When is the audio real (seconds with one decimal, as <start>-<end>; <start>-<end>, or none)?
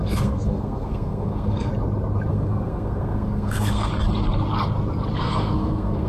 1.7-2.3; 3.9-5.2